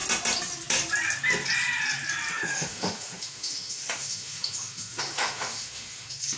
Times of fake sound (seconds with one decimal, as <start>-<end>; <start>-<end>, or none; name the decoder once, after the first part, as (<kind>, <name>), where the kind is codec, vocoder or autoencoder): 2.3-6.4 (autoencoder, DAC-VAE)

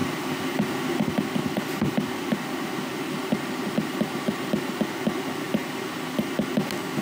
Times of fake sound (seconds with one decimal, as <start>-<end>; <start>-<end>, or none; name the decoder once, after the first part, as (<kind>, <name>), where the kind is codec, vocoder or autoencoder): 2.9-4.8 (vocoder, BigVGAN v2)